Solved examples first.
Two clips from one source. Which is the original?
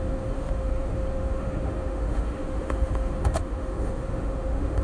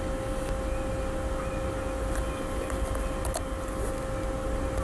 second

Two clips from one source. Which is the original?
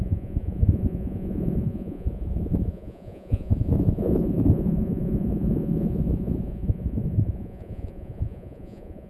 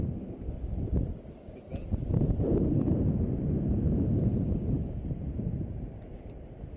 second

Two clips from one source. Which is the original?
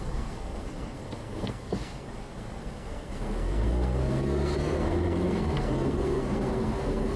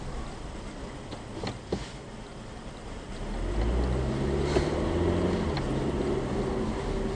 second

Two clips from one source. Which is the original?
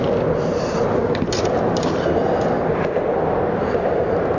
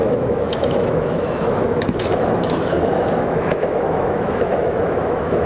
first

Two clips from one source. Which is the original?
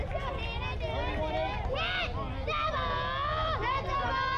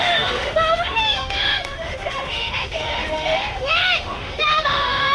first